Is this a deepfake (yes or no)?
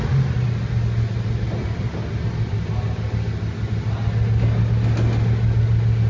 no